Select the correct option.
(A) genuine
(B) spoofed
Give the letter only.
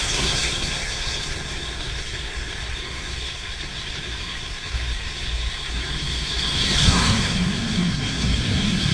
B